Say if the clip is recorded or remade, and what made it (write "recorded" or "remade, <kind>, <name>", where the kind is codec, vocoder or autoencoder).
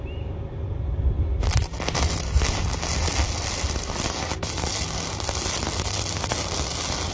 recorded